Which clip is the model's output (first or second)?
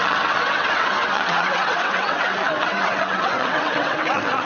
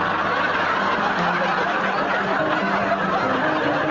first